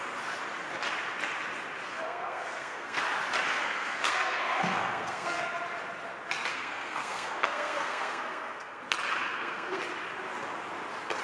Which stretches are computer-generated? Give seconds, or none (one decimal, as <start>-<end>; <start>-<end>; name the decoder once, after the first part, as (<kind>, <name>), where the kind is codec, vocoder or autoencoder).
1.9-3.0 (codec, SNAC); 3.5-5.4; 6.5-8.8; 9.3-9.8